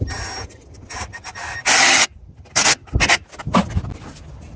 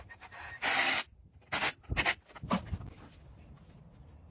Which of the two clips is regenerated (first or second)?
second